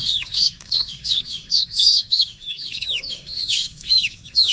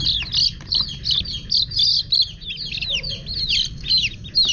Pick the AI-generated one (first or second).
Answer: first